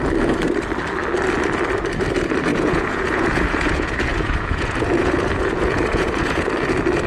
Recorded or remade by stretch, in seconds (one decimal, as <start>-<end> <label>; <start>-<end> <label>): 0.0-2.5 recorded; 2.5-6.5 remade; 6.5-7.1 recorded